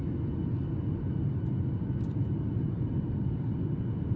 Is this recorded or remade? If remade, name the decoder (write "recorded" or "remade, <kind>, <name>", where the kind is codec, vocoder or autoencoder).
recorded